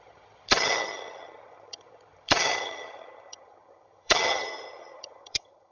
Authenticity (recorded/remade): remade